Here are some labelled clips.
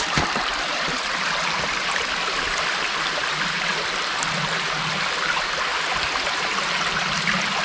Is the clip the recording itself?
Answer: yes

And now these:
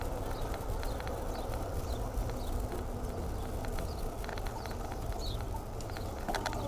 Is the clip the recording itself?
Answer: yes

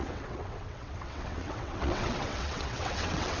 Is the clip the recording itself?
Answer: no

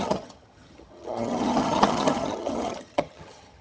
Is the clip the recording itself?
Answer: no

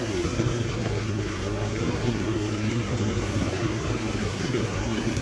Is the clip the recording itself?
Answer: no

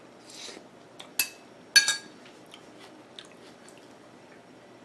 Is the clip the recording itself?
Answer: yes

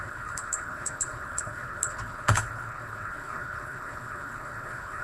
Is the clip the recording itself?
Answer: no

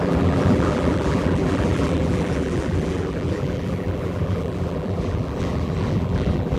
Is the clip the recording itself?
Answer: no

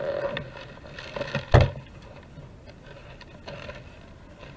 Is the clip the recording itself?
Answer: yes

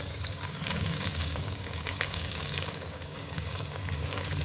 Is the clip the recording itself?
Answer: no